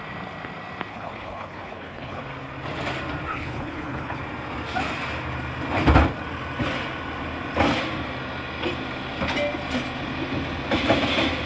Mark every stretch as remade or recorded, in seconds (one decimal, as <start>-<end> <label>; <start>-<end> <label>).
0.0-0.9 recorded; 0.9-2.2 remade; 2.2-3.3 recorded; 3.3-4.2 remade; 4.2-11.5 recorded